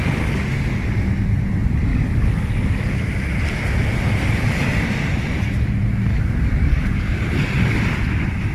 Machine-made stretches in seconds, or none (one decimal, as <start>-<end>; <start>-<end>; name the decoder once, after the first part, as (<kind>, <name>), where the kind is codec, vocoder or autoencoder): 1.9-2.9 (codec, DAC); 6.1-7.2